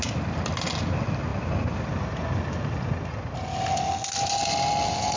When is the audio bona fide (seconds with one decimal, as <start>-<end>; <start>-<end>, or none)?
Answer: 0.0-5.2